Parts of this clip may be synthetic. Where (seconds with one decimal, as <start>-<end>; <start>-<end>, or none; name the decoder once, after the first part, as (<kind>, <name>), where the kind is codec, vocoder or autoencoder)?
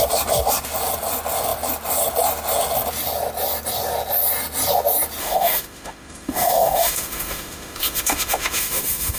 5.2-9.2 (autoencoder, DAC-VAE)